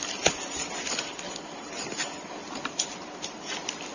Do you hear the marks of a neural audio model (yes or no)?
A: yes